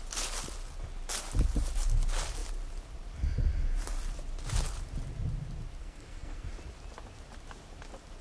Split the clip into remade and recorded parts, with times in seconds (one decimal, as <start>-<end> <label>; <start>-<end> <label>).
0.0-5.8 recorded; 5.8-6.5 remade; 6.5-8.2 recorded